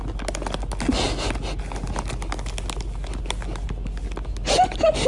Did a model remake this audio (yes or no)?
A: no